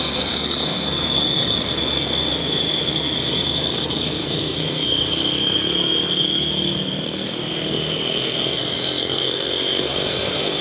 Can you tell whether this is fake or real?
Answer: fake